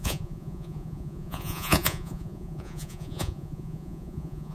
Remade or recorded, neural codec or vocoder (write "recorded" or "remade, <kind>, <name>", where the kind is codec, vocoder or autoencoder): remade, vocoder, Vocos